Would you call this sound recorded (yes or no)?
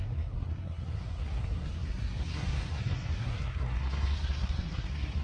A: no